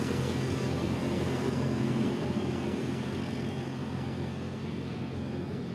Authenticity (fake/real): fake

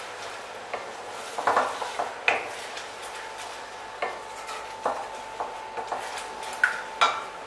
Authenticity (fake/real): real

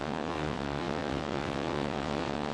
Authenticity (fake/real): fake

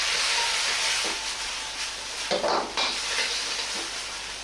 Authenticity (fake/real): real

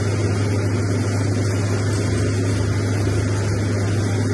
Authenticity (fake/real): real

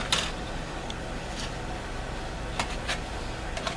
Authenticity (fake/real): real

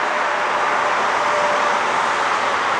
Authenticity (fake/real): real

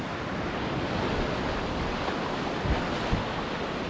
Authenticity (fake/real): real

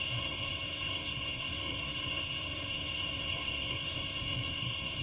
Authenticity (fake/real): fake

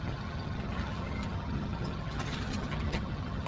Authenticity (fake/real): fake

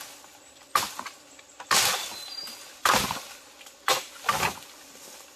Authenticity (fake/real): real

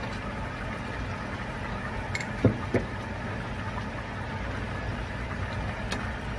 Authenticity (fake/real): real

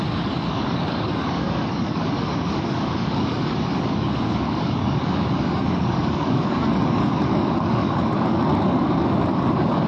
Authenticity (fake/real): fake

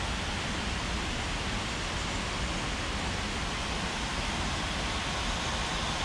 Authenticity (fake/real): real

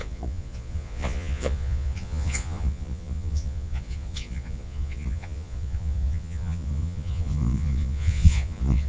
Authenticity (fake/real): fake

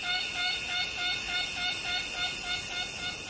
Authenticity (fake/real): real